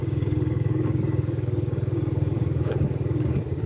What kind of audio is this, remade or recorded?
remade